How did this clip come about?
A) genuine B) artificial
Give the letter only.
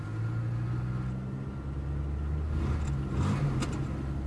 A